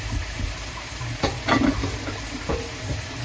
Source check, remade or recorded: remade